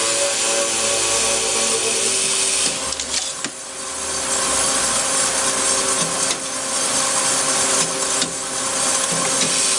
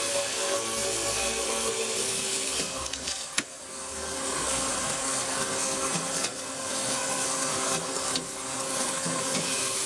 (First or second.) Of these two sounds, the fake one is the second